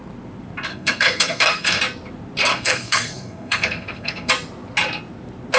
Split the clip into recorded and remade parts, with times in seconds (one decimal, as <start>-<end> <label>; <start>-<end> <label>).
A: 0.0-0.7 recorded; 0.7-1.8 remade; 1.8-2.5 recorded; 2.5-4.3 remade; 4.3-5.6 recorded